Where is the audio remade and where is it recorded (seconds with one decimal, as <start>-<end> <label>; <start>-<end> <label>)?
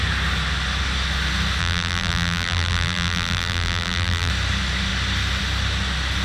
0.0-1.6 recorded; 1.6-4.3 remade; 4.3-6.2 recorded